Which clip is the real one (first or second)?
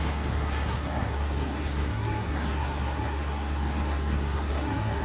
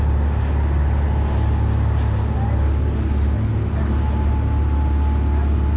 second